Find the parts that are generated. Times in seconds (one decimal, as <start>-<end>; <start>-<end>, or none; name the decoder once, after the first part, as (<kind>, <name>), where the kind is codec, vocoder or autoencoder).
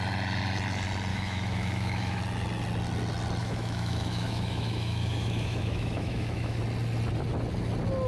1.1-2.2 (autoencoder, DAC-VAE); 3.4-6.6